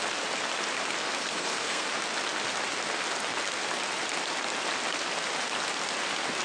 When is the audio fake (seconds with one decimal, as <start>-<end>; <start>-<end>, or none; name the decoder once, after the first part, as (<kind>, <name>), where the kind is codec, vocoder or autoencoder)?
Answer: 1.2-1.9 (codec, SNAC)